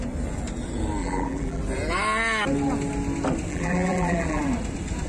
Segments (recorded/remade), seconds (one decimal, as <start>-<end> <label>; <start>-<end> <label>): 0.0-1.0 recorded; 1.0-1.6 remade; 1.6-3.5 recorded; 3.5-4.4 remade; 4.4-5.1 recorded